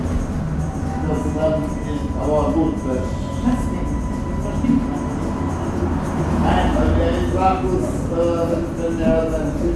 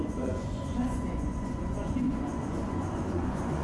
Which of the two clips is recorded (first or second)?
first